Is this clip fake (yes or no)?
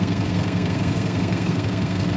yes